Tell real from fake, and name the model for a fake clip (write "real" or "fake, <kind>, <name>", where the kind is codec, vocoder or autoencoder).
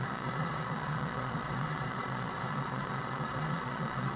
fake, vocoder, Vocos